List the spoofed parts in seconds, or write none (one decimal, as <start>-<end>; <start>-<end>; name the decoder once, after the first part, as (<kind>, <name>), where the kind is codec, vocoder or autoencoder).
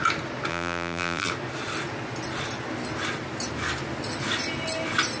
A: 0.5-1.3 (vocoder, BigVGAN v2)